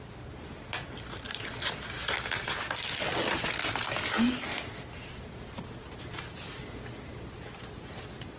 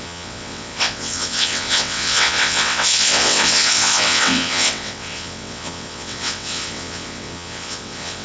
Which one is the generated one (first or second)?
second